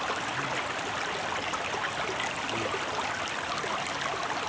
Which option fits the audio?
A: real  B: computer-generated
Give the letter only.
A